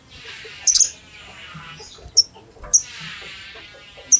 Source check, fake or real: real